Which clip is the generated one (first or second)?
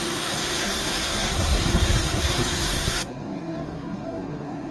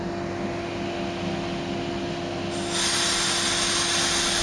first